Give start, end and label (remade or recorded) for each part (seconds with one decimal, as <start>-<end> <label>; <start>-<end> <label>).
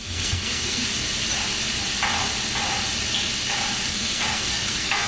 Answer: 0.0-0.8 remade; 0.8-3.9 recorded; 3.9-5.1 remade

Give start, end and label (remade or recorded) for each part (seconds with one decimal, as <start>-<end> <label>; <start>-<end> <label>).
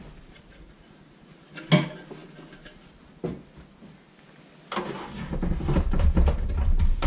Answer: 0.0-7.1 recorded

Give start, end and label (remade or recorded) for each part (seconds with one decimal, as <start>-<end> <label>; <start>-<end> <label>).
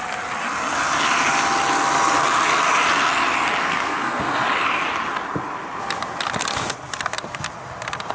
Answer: 0.0-3.6 recorded; 3.6-4.4 remade; 4.4-8.1 recorded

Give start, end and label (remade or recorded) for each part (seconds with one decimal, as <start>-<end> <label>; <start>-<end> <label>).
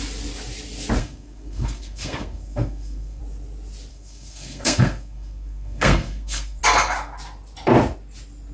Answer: 0.0-1.0 recorded; 1.0-3.2 remade; 3.2-3.9 recorded; 3.9-6.6 remade; 6.6-8.5 recorded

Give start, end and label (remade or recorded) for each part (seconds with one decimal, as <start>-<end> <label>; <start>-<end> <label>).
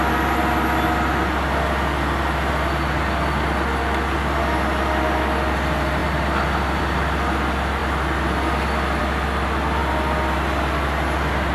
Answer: 0.0-11.5 recorded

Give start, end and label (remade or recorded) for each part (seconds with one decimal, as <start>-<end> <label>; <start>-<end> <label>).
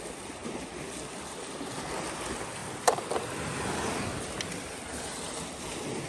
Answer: 0.0-6.1 recorded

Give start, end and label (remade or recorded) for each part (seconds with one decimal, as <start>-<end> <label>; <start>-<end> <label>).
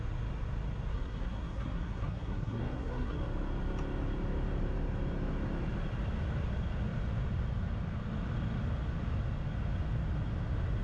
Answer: 0.0-0.9 recorded; 0.9-3.2 remade; 3.2-10.8 recorded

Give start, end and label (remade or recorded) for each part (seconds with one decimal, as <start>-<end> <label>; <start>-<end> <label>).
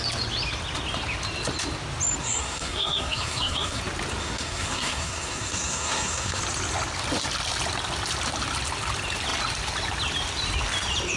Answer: 0.0-2.2 recorded; 2.2-3.8 remade; 3.8-4.2 recorded; 4.2-6.4 remade; 6.4-11.2 recorded